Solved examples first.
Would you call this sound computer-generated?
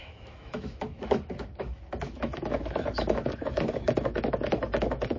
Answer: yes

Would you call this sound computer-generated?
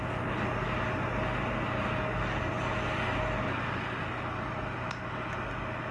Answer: no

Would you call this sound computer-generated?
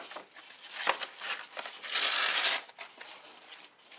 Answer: no